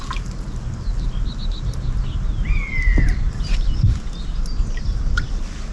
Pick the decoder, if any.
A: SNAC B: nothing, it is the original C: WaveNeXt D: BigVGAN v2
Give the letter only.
B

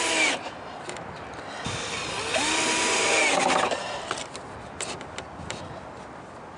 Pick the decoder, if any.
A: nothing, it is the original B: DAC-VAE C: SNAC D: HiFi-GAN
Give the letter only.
A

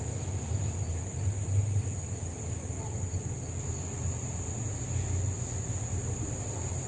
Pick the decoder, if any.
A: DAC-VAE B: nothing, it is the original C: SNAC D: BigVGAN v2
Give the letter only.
B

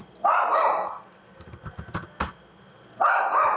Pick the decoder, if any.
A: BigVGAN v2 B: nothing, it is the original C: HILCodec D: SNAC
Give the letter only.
B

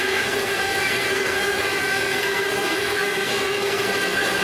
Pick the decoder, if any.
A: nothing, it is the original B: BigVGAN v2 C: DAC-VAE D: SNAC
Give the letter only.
D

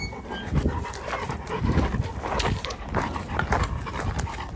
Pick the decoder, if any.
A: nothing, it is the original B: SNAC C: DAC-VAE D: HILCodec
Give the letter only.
A